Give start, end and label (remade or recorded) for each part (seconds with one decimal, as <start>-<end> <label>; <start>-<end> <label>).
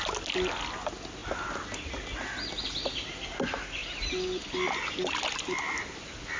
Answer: 0.0-6.4 recorded